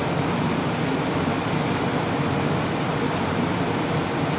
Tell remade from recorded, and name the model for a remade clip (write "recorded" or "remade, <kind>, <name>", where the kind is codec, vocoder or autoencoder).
recorded